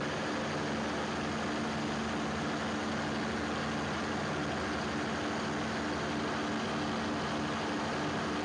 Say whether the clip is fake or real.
real